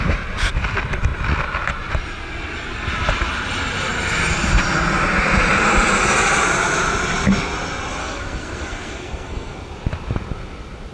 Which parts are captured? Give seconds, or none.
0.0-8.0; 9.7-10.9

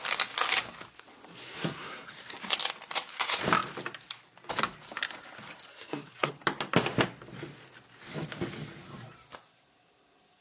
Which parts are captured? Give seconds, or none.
0.0-1.4; 2.5-5.7; 6.3-10.4

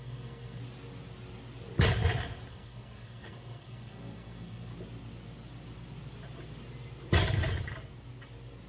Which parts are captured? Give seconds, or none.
0.6-2.5; 4.7-8.7

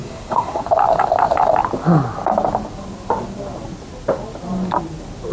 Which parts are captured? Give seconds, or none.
0.6-5.3

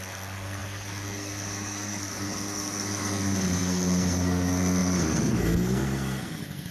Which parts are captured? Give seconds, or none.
none

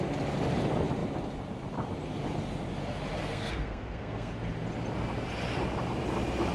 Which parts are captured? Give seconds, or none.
0.0-3.2; 4.3-6.5